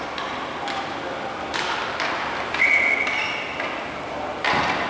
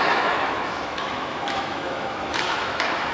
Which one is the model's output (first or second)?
second